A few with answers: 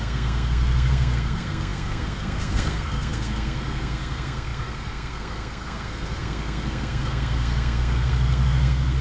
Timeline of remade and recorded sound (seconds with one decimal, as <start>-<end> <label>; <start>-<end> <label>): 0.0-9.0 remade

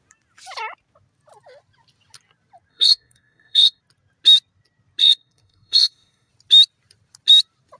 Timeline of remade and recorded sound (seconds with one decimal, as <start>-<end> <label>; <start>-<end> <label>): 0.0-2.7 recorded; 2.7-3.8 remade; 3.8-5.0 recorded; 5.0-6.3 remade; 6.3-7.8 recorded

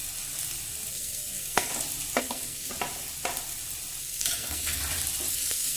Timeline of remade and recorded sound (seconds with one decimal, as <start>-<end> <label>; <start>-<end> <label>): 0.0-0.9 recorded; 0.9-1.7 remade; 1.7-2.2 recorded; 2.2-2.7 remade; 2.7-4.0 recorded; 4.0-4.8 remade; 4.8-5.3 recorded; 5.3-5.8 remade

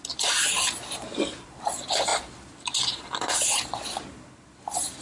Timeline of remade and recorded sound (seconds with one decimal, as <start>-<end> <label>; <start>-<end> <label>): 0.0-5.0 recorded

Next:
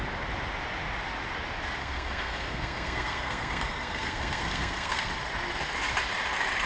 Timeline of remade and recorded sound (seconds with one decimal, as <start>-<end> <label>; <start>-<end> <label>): 0.0-1.8 recorded; 1.8-5.1 remade; 5.1-6.7 recorded

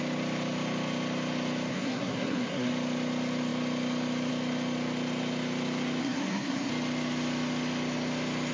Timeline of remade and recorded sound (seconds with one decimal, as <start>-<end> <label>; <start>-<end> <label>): 0.0-1.7 recorded; 1.7-2.7 remade; 2.7-6.0 recorded; 6.0-6.7 remade; 6.7-8.5 recorded

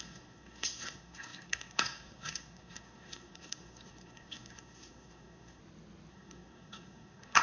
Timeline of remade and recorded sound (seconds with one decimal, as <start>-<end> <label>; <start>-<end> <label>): 0.0-5.6 remade; 5.6-6.1 recorded; 6.1-7.4 remade

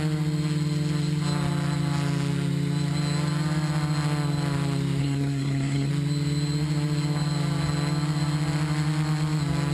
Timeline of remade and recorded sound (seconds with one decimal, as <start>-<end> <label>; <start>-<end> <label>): 0.0-5.0 recorded; 5.0-5.9 remade; 5.9-9.7 recorded